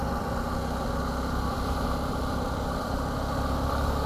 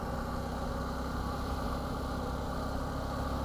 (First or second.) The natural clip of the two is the second